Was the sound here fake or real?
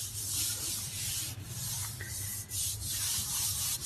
fake